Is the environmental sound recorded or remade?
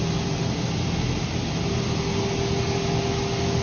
recorded